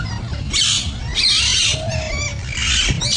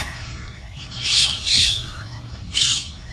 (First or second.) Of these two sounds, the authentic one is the first